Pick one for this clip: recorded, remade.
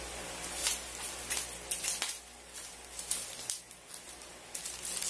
recorded